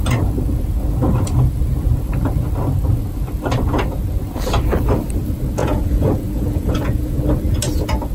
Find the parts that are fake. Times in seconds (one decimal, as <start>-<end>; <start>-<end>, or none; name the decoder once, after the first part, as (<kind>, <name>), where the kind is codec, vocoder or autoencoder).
5.6-7.2 (vocoder, Vocos)